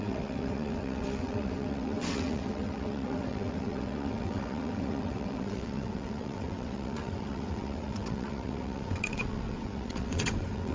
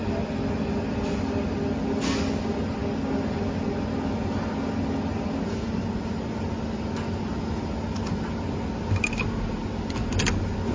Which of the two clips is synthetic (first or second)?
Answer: first